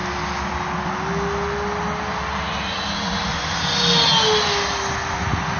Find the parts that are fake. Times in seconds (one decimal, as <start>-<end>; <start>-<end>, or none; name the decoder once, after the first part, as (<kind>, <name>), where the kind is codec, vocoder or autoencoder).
none